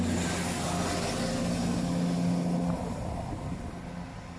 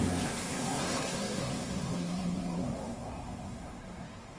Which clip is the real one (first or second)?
first